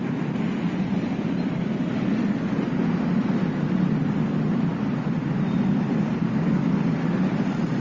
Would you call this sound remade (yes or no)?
no